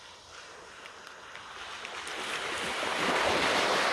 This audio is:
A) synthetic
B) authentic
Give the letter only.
B